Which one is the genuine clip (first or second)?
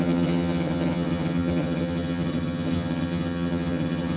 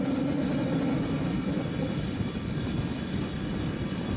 second